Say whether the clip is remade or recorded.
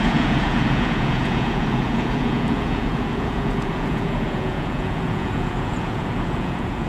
remade